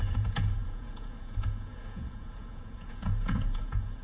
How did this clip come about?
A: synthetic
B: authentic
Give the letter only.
A